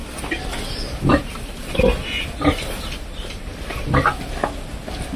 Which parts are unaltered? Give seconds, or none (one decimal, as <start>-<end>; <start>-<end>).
0.6-2.0; 2.7-5.2